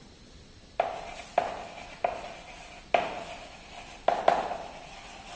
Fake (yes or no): no